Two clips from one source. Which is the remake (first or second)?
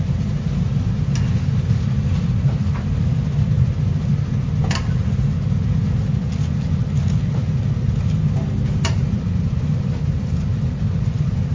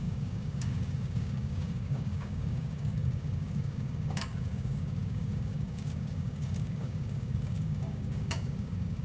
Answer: second